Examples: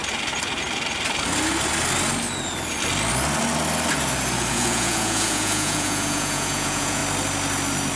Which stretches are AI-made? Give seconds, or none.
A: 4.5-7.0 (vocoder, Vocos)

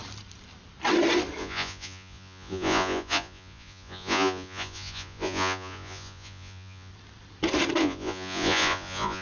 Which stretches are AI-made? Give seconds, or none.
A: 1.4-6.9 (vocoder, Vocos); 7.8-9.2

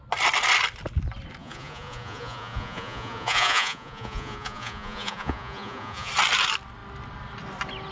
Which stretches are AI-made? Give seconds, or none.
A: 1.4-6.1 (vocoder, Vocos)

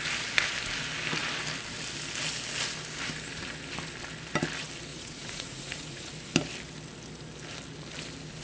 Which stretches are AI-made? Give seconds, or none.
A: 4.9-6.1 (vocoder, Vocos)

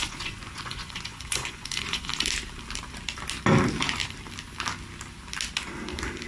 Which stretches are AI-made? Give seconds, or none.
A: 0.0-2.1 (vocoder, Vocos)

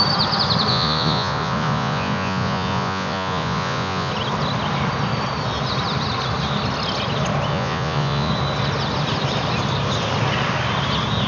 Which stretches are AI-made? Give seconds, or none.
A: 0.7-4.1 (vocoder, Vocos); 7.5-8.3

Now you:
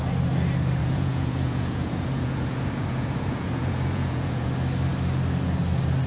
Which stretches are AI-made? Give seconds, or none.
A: 0.8-4.5 (vocoder, Vocos)

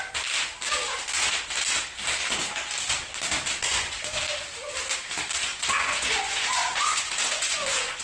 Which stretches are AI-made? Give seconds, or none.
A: 3.7-4.2 (vocoder, Vocos); 5.5-8.0